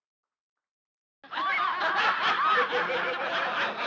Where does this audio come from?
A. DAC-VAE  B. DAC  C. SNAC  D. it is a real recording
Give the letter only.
D